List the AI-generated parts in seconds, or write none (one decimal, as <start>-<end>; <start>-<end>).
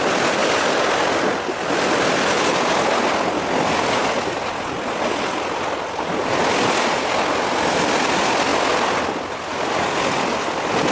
none